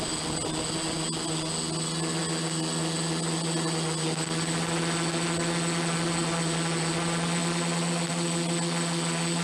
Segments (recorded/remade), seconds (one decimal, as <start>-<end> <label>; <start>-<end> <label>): 0.0-9.4 recorded